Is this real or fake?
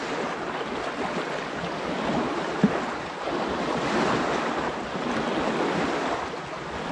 real